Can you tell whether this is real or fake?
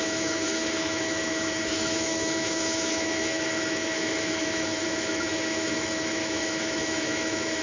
fake